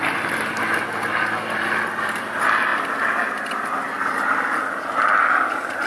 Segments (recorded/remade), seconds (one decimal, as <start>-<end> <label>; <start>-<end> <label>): 0.0-5.9 recorded